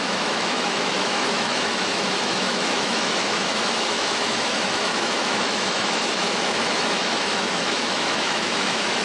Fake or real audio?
fake